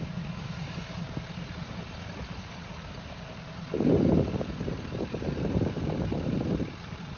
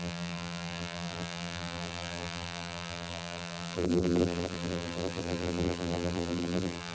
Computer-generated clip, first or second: second